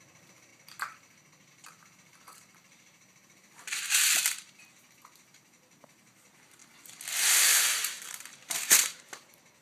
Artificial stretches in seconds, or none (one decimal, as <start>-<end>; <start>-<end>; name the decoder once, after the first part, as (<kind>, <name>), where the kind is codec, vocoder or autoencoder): 0.0-0.5 (vocoder, BigVGAN v2); 1.5-6.6; 7.3-9.6

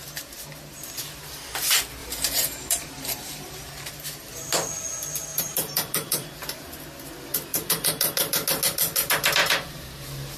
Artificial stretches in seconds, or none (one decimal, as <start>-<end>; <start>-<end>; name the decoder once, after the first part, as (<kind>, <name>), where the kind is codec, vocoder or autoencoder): 2.0-3.9 (vocoder, BigVGAN v2); 5.3-6.7; 7.5-8.1; 9.4-10.0

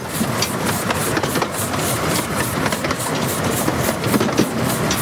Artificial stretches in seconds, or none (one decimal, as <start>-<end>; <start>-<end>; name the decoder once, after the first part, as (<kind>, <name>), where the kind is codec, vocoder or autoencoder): none

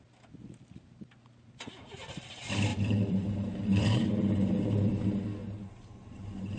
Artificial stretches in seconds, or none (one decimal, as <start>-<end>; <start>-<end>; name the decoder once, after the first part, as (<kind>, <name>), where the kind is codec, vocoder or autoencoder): 2.7-4.6 (vocoder, BigVGAN v2); 5.4-6.6

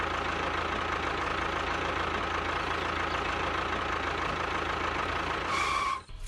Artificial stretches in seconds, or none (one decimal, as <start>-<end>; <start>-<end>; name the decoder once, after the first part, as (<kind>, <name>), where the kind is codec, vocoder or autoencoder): 5.5-6.3 (vocoder, BigVGAN v2)

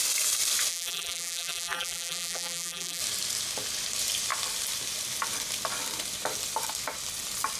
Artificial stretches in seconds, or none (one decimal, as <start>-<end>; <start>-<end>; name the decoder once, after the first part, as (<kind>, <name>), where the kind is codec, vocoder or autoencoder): 0.7-3.0 (vocoder, BigVGAN v2)

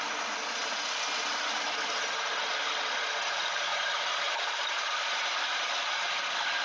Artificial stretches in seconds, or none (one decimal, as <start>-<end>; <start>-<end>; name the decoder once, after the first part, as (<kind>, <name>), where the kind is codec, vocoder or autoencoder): 3.7-5.9 (vocoder, BigVGAN v2)

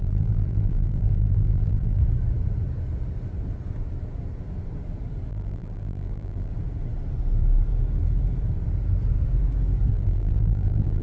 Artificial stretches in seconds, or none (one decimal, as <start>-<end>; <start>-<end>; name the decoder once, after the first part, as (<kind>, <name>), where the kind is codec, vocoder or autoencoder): 0.0-2.0 (vocoder, BigVGAN v2); 5.3-6.5; 9.9-11.0